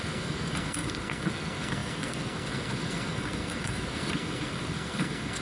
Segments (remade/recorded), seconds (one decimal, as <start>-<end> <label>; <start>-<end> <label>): 0.0-5.4 remade